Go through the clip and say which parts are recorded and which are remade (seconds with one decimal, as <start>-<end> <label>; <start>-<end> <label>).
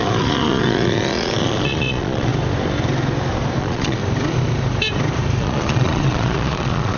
0.0-2.3 remade; 2.3-3.6 recorded; 3.6-4.0 remade; 4.0-5.4 recorded; 5.4-7.0 remade